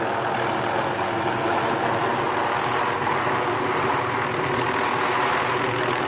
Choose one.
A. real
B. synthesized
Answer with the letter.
A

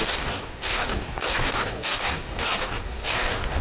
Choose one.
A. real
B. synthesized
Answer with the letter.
B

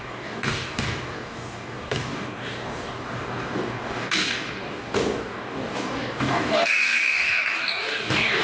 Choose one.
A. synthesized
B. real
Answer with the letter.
A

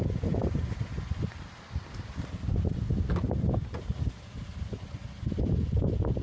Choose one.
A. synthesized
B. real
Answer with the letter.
B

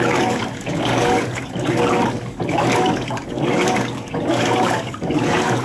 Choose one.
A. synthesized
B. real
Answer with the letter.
A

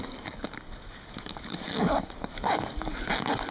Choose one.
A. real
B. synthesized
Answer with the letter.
B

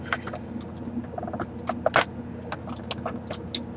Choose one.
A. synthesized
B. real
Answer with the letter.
B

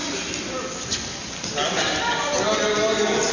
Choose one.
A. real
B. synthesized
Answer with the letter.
A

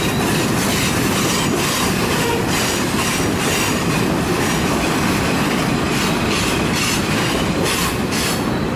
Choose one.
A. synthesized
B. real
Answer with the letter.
B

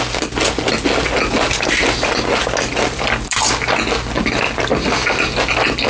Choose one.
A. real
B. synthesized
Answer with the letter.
A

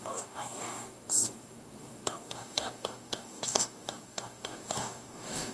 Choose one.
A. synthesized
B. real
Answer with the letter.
A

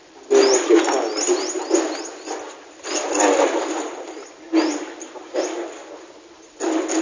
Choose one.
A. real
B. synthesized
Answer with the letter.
A